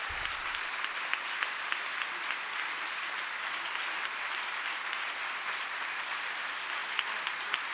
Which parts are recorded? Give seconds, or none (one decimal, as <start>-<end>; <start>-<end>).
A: 0.0-7.7